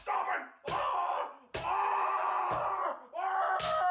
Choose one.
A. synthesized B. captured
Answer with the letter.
B